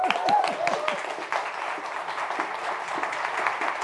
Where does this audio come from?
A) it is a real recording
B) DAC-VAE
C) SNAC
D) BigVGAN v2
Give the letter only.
A